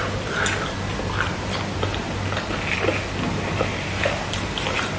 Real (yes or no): yes